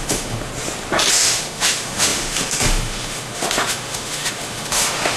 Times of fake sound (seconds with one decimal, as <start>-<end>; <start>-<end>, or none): 0.0-0.5; 1.1-5.2